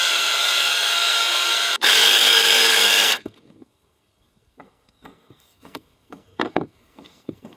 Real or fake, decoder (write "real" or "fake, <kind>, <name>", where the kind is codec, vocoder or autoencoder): fake, codec, SNAC